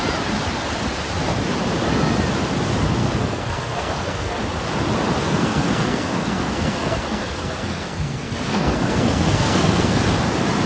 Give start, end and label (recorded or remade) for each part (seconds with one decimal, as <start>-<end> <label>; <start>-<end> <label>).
0.0-3.0 recorded; 3.0-4.4 remade; 4.4-5.2 recorded; 5.2-10.0 remade; 10.0-10.7 recorded